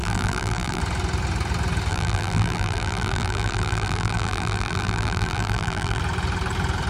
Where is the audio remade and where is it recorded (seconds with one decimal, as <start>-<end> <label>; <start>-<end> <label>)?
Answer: 0.0-0.8 remade; 0.8-1.9 recorded; 1.9-6.0 remade; 6.0-6.9 recorded